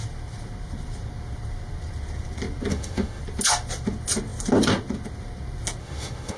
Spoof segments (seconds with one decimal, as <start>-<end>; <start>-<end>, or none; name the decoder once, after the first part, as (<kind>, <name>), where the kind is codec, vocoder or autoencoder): 2.7-3.2 (autoencoder, DAC-VAE); 5.8-6.4